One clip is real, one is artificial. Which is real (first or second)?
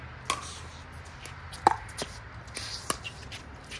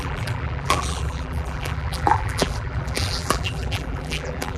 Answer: first